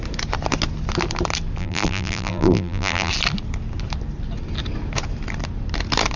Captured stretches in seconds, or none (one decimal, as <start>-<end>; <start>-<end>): 0.0-1.6; 3.1-6.2